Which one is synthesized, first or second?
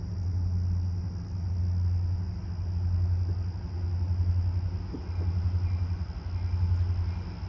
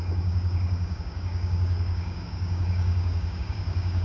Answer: second